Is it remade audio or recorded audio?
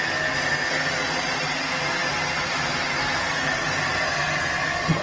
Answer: recorded